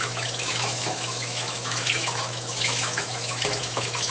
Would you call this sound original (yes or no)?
no